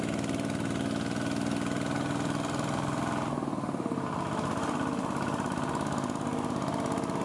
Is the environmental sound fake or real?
real